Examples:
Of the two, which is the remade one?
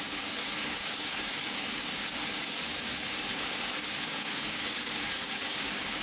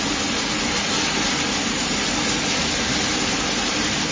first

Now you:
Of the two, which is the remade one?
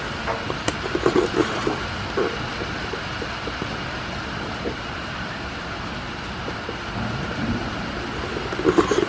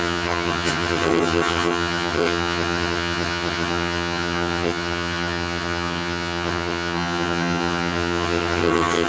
second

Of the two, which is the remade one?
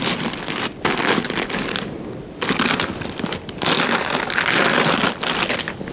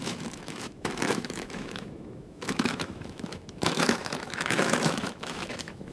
second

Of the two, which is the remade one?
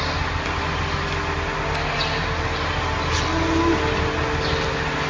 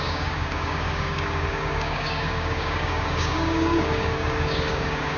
second